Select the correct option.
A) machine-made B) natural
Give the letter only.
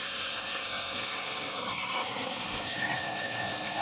A